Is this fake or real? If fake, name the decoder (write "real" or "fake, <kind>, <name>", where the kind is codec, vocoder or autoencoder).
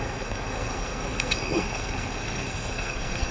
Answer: fake, codec, SNAC